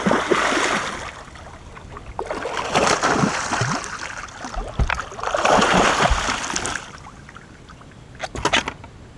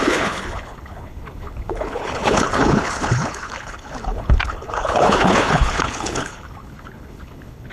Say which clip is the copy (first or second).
second